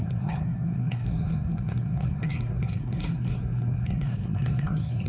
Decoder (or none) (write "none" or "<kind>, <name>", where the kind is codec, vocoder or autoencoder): codec, SNAC